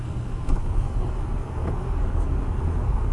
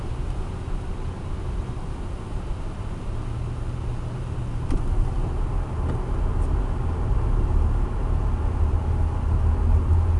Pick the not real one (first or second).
first